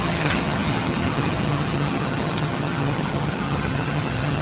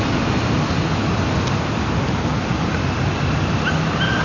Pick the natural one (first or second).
second